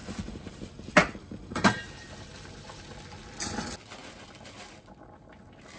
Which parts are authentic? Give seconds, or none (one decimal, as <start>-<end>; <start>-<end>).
0.5-1.0; 2.9-5.8